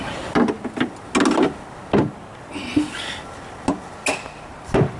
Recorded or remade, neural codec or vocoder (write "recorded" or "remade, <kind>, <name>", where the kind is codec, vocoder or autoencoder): recorded